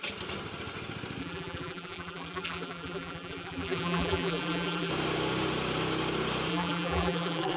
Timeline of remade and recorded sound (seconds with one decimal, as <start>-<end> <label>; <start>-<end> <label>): 0.0-1.2 recorded; 1.2-4.9 remade; 4.9-6.5 recorded; 6.5-7.6 remade

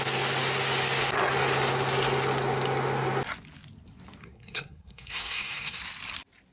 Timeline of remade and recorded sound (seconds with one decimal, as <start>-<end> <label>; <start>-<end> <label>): 0.0-4.2 recorded; 4.2-5.8 remade; 5.8-6.5 recorded

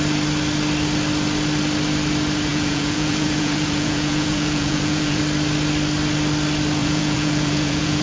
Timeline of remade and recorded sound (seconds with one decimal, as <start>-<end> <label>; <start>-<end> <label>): 0.0-2.5 recorded; 2.5-5.2 remade; 5.2-6.8 recorded; 6.8-8.0 remade

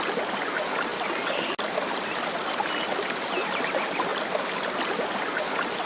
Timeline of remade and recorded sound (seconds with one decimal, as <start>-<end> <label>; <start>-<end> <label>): 0.0-5.9 recorded

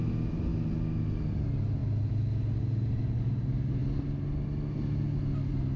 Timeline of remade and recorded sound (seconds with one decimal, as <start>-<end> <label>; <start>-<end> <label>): 0.0-5.8 recorded

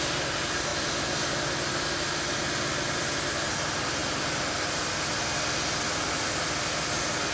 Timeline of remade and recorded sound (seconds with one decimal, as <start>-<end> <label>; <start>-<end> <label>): 0.0-7.3 recorded

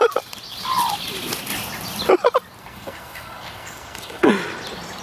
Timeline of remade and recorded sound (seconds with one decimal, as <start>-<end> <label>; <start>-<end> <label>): 0.0-2.6 recorded; 2.6-4.3 remade; 4.3-5.0 recorded